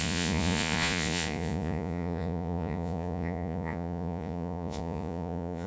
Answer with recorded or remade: remade